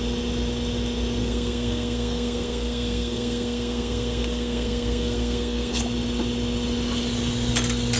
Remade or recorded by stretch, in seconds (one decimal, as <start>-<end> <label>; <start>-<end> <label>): 0.0-1.2 recorded; 1.2-5.8 remade; 5.8-8.0 recorded